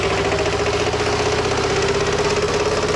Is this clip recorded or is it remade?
recorded